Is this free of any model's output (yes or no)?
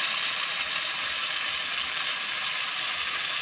yes